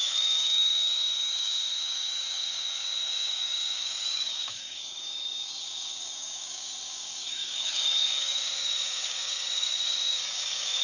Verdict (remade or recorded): remade